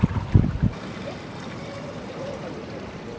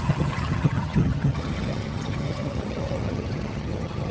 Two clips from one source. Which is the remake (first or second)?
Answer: second